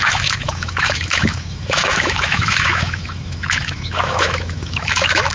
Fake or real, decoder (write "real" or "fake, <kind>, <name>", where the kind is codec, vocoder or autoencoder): fake, autoencoder, DAC-VAE